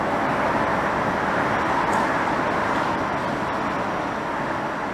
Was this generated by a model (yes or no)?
no